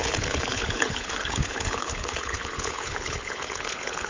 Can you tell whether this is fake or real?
fake